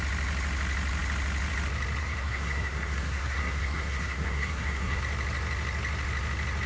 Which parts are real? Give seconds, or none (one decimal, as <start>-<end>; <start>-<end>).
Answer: 0.0-2.0; 5.0-6.7